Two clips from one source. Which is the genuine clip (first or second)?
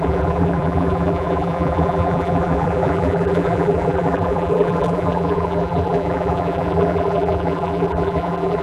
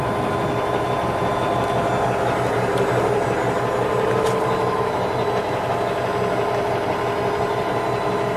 second